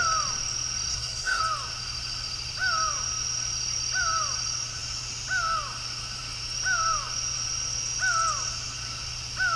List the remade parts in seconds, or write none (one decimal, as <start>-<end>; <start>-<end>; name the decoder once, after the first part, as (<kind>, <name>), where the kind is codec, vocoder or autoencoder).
0.9-1.4 (codec, SNAC)